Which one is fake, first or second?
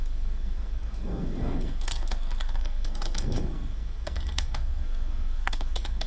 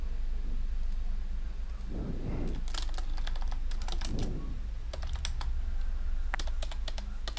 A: first